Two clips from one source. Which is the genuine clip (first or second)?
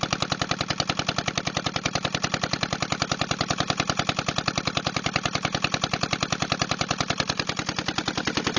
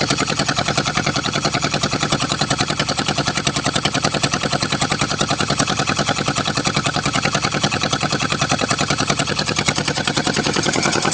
first